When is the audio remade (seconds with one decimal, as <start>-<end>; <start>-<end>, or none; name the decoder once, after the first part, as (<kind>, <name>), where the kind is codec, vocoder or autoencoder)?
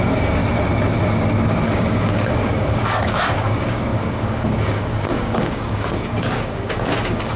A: 0.0-0.4 (codec, DAC); 1.7-7.4